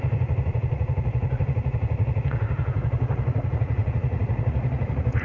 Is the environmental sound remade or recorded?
remade